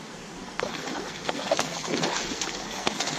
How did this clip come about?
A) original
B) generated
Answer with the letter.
B